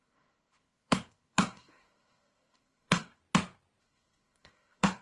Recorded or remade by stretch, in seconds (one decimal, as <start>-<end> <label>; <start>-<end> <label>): 0.0-3.2 remade; 3.2-3.8 recorded; 3.8-5.0 remade

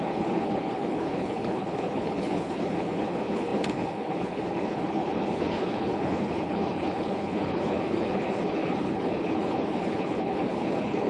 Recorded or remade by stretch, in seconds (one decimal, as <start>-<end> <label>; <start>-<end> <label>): 0.0-11.1 remade

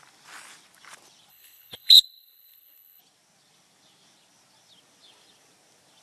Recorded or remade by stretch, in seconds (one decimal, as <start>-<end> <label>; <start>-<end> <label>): 0.0-1.3 recorded; 1.3-3.0 remade; 3.0-6.0 recorded

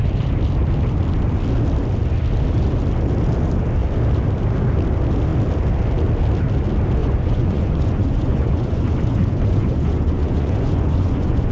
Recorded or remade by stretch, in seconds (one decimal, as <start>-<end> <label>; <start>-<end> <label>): 0.0-7.0 recorded; 7.0-11.5 remade

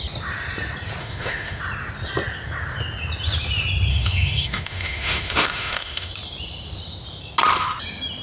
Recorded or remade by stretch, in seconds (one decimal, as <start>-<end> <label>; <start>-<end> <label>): 0.0-1.0 recorded; 1.0-1.6 remade; 1.6-3.9 recorded; 3.9-6.1 remade; 6.1-8.2 recorded

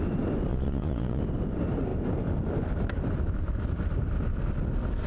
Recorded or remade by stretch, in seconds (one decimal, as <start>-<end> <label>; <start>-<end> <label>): 0.0-0.5 recorded; 0.5-1.2 remade; 1.2-5.1 recorded

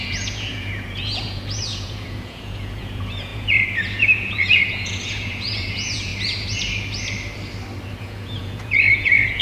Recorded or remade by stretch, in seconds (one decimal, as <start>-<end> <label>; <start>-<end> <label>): 0.0-6.1 remade; 6.1-8.0 recorded; 8.0-9.4 remade